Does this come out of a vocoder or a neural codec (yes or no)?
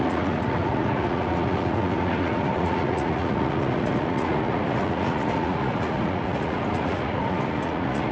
yes